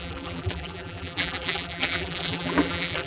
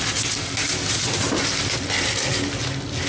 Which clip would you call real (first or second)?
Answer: second